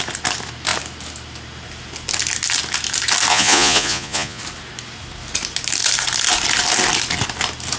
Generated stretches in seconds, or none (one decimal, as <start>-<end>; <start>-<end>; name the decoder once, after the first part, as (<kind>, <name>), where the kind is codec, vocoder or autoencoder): 3.3-4.4 (vocoder, Vocos)